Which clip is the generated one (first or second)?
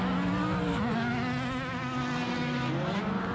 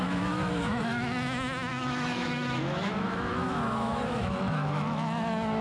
second